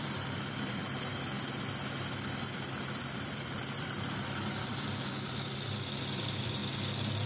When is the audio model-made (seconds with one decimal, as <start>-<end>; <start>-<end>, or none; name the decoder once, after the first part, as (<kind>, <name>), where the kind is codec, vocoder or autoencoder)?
0.0-0.8 (vocoder, BigVGAN v2); 2.4-6.6